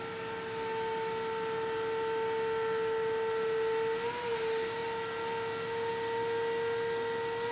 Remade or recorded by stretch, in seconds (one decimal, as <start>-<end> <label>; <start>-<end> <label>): 0.0-7.5 recorded